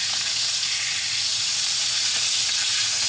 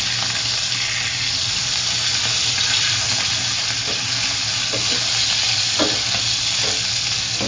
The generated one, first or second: first